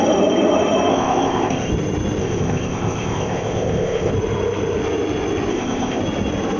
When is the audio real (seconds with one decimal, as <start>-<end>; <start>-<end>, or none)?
0.0-0.9; 1.7-2.2; 4.1-5.5; 6.0-6.6